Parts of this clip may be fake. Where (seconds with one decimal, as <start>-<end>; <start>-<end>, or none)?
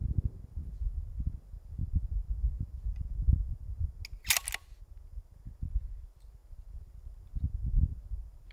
none